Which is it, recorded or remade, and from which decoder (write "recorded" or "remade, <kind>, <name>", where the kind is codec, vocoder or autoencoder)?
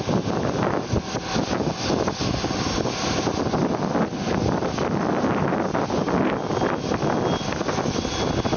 recorded